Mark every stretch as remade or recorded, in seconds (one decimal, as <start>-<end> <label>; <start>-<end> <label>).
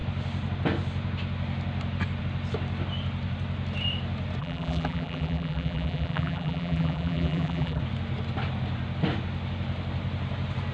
0.0-4.4 recorded; 4.4-7.8 remade; 7.8-10.7 recorded